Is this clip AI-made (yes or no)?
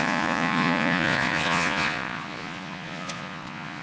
yes